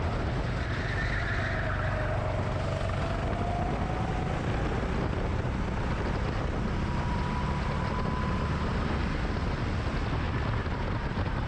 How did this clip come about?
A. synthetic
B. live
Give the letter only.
B